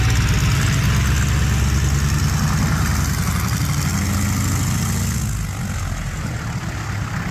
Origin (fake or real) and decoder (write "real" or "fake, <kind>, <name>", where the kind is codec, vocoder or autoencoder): real